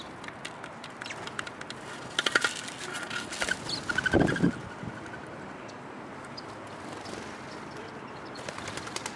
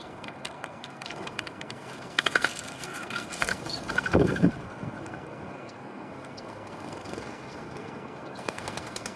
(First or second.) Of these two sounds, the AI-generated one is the second